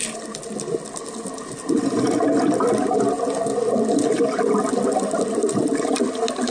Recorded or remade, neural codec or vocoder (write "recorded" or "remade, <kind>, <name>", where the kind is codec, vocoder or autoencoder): recorded